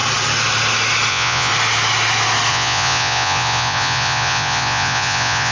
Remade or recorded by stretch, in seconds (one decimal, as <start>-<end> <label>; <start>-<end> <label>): 0.0-1.1 recorded; 1.1-1.5 remade; 1.5-2.5 recorded; 2.5-5.5 remade